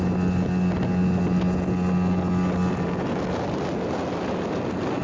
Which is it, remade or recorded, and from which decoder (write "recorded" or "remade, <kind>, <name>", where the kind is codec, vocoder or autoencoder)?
recorded